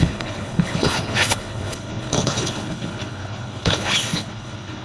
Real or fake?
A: fake